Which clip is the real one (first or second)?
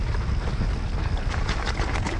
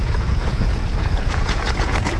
first